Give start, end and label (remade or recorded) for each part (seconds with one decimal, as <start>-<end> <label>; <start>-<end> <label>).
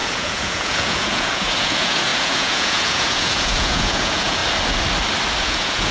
0.0-4.4 remade; 4.4-5.4 recorded; 5.4-5.9 remade